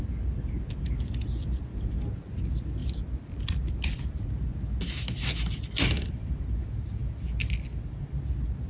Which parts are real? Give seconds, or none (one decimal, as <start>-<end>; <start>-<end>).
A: 0.0-8.7